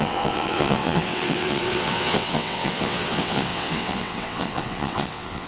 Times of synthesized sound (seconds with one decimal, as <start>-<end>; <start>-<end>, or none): 0.0-5.5